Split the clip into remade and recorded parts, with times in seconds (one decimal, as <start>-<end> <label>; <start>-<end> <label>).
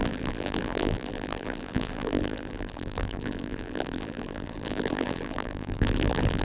0.0-6.4 remade